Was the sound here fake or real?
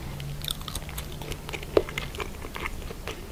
real